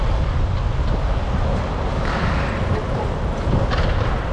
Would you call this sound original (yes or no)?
yes